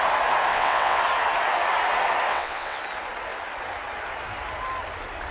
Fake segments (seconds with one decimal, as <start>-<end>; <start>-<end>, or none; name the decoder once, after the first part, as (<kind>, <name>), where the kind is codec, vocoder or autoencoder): 0.5-1.0 (vocoder, WaveNeXt); 2.3-2.8